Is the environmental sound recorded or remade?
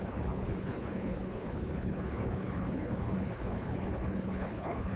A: remade